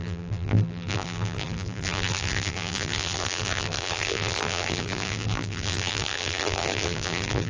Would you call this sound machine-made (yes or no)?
yes